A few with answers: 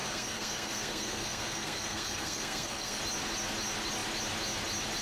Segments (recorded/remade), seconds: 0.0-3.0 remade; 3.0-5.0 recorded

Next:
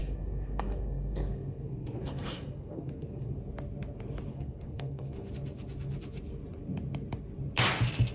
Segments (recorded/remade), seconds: 0.0-3.4 remade; 3.4-4.3 recorded; 4.3-5.3 remade; 5.3-8.1 recorded

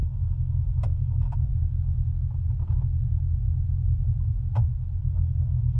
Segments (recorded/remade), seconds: 0.0-1.5 remade; 1.5-5.0 recorded; 5.0-5.8 remade

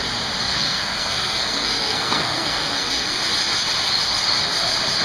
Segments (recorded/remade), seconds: 0.0-0.4 recorded; 0.4-3.2 remade; 3.2-5.0 recorded

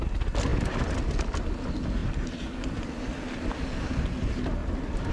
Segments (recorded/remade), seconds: 0.0-5.1 recorded

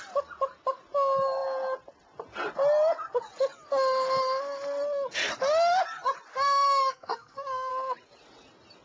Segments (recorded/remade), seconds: 0.0-6.3 recorded; 6.3-7.7 remade; 7.7-8.8 recorded

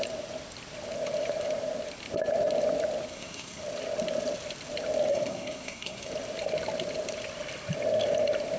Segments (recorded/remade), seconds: 0.0-3.1 recorded; 3.1-3.6 remade; 3.6-5.1 recorded; 5.1-6.1 remade; 6.1-8.6 recorded

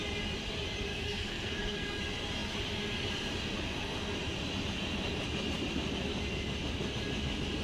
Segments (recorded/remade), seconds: 0.0-0.9 recorded; 0.9-2.0 remade; 2.0-7.6 recorded